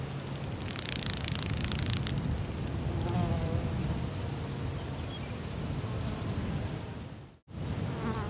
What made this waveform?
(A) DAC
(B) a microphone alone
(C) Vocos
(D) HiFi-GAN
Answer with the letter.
B